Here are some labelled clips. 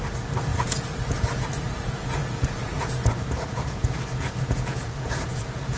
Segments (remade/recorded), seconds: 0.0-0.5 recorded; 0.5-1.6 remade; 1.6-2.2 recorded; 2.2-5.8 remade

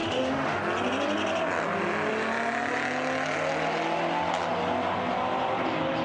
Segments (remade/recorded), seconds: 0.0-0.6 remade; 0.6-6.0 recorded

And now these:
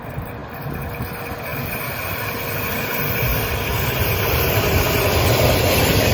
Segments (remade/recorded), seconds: 0.0-3.3 recorded; 3.3-4.6 remade; 4.6-6.1 recorded

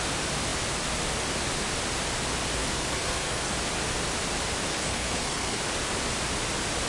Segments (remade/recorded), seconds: 0.0-2.6 recorded; 2.6-3.5 remade; 3.5-4.7 recorded; 4.7-5.6 remade; 5.6-6.9 recorded

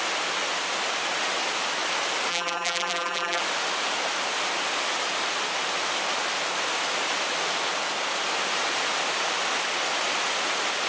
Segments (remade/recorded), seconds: 0.0-2.3 recorded; 2.3-3.4 remade; 3.4-10.9 recorded

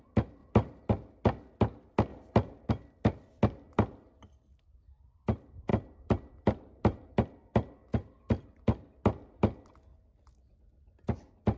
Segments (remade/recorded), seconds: 0.0-0.4 recorded; 0.4-0.9 remade; 0.9-2.1 recorded; 2.1-2.7 remade; 2.7-5.7 recorded; 5.7-7.1 remade; 7.1-11.6 recorded